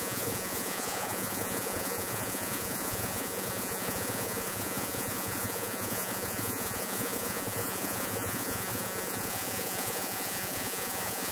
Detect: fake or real fake